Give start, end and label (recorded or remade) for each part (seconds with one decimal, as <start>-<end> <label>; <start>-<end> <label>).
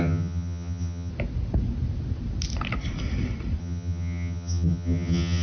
0.0-1.1 remade; 1.1-3.6 recorded; 3.6-5.4 remade